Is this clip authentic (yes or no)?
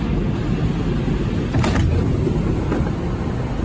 yes